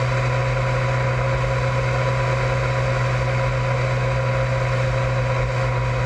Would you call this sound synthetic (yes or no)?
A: no